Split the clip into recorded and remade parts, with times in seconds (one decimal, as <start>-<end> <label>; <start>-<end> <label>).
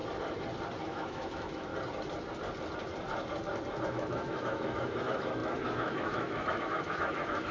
0.0-0.8 recorded; 0.8-1.7 remade; 1.7-3.9 recorded; 3.9-7.5 remade